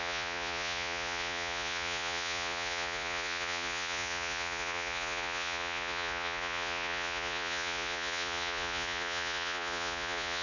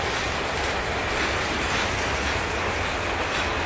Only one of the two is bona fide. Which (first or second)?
second